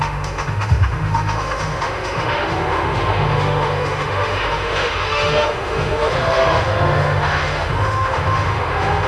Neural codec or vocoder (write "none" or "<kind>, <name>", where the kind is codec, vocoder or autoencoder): autoencoder, DAC-VAE